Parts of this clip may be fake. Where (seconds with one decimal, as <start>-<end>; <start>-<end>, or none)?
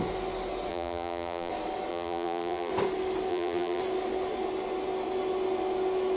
0.7-1.5; 1.9-2.7; 3.3-3.8